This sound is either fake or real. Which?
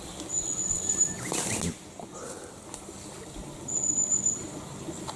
real